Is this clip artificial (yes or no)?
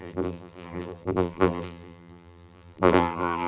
yes